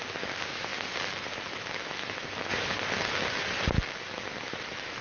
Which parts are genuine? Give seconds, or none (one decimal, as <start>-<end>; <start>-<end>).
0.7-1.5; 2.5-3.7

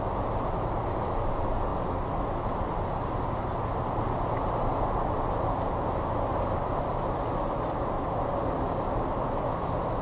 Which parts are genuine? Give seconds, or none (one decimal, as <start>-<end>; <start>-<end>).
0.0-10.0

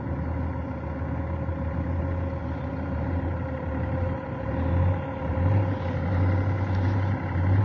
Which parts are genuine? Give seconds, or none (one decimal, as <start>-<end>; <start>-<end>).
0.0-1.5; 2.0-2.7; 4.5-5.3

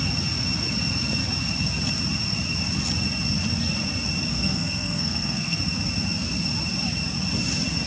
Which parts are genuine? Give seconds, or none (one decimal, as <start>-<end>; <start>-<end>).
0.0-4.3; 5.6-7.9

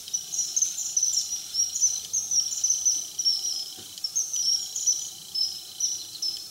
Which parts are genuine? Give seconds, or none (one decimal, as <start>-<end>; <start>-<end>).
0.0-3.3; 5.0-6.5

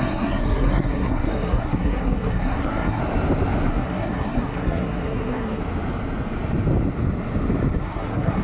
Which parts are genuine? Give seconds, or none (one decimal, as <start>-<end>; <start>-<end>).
3.0-3.7; 5.6-7.8